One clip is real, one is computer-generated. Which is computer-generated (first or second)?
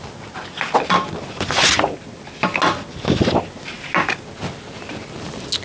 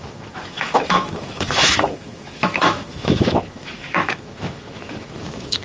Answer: second